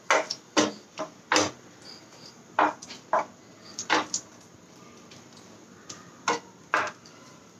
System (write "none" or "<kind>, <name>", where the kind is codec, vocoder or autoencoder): none